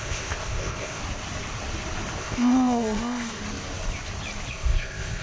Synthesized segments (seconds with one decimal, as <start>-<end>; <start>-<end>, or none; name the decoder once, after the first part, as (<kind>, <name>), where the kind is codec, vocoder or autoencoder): 0.0-1.0 (codec, ZipCodec); 2.2-3.4; 4.5-5.2